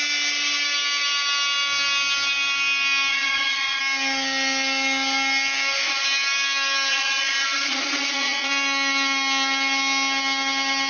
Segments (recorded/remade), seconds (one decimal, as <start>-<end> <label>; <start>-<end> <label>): 0.0-3.1 recorded; 3.1-3.8 remade; 3.8-6.9 recorded; 6.9-8.5 remade; 8.5-10.9 recorded